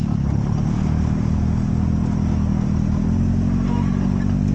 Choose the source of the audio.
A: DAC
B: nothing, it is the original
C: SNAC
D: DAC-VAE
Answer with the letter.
B